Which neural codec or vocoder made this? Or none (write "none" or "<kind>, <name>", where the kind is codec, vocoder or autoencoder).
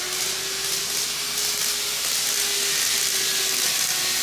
none